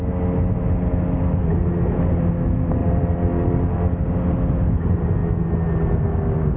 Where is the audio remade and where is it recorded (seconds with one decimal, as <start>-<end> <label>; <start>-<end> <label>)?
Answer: 0.0-2.8 recorded; 2.8-3.6 remade; 3.6-6.6 recorded